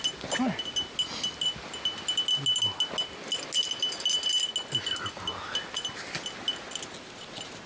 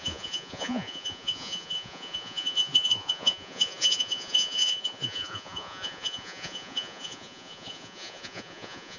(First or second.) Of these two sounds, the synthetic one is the second